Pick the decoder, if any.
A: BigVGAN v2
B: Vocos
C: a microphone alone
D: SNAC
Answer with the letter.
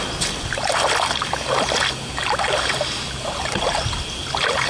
C